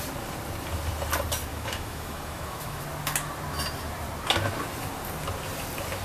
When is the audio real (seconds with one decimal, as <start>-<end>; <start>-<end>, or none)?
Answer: 0.0-1.5; 2.8-6.0